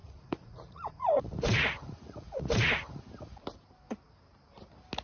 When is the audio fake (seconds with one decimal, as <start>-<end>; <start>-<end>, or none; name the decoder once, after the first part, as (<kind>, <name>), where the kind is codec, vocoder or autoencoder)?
0.0-3.0 (vocoder, Vocos)